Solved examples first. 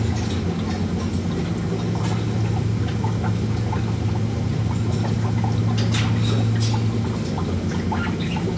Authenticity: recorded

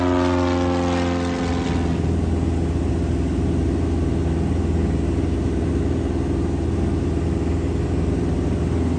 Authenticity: recorded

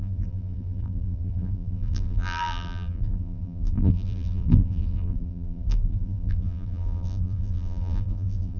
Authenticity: remade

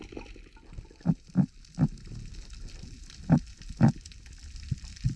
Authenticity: recorded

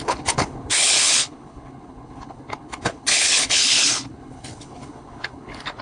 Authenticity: remade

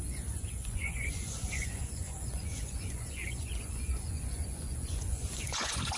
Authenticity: remade